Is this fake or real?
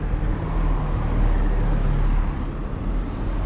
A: real